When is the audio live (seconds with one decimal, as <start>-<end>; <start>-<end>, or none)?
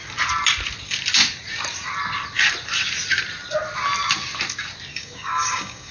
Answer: 0.0-4.9